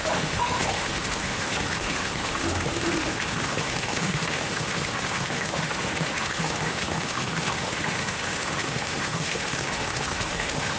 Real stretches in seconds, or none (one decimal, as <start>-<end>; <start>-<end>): none